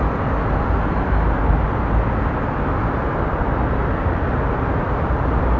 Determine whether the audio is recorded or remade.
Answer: recorded